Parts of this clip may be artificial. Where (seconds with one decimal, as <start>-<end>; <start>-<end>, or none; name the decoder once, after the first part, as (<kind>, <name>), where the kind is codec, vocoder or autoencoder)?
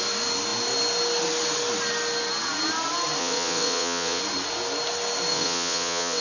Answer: 3.2-4.2 (vocoder, WaveNeXt); 5.3-6.2